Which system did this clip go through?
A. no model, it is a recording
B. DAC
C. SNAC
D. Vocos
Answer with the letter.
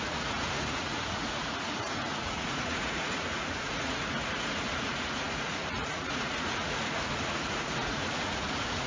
D